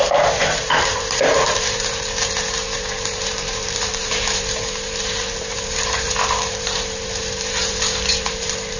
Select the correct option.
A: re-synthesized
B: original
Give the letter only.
A